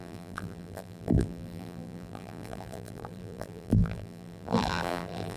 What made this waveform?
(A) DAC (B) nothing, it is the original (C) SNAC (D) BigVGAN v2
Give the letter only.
D